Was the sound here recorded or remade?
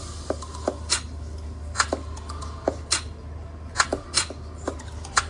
remade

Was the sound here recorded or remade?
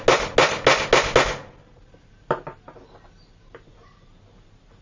recorded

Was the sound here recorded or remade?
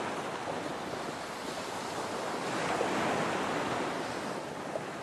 recorded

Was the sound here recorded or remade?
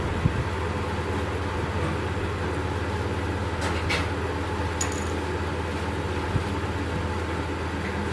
recorded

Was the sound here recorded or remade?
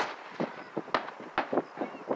recorded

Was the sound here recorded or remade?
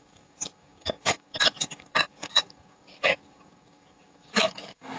remade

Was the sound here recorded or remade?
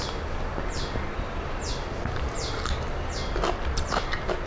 recorded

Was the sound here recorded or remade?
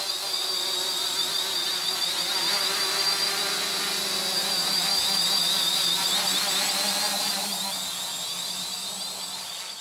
recorded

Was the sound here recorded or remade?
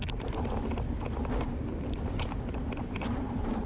remade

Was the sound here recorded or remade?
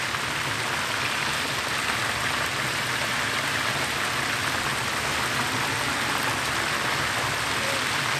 recorded